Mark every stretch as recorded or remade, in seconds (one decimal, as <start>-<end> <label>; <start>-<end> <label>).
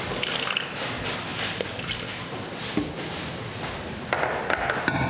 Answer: 0.0-5.1 recorded